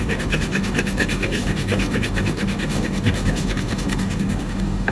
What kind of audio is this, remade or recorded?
remade